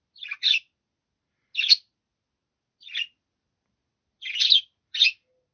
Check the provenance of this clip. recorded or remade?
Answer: recorded